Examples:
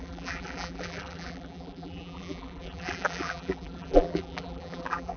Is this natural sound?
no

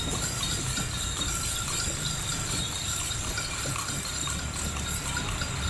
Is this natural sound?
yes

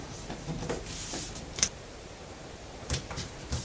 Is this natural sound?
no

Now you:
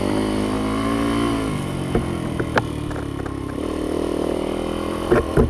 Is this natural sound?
yes